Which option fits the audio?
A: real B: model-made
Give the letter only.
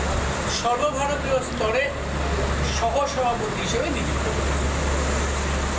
A